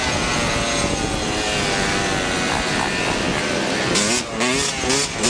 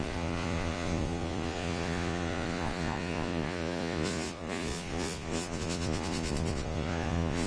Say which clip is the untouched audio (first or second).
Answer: first